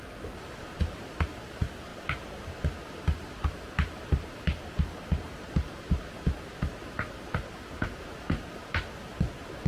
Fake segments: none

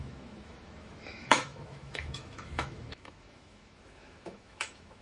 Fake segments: 0.0-5.0 (autoencoder, DAC-VAE)